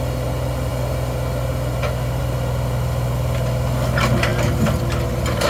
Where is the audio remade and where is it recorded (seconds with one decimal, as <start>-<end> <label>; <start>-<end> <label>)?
0.0-4.3 recorded; 4.3-4.8 remade; 4.8-5.5 recorded